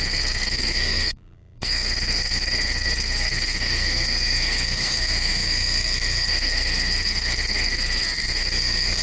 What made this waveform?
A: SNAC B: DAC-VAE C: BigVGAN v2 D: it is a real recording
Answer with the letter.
A